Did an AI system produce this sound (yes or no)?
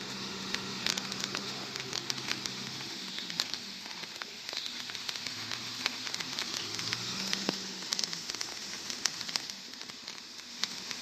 yes